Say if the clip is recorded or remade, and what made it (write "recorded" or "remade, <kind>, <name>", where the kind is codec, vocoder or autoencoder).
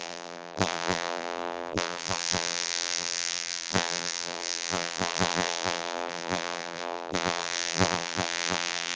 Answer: remade, vocoder, BigVGAN v2